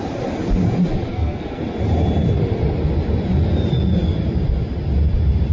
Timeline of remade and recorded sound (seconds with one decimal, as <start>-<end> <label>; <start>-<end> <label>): 0.0-1.1 recorded; 1.1-1.6 remade; 1.6-5.5 recorded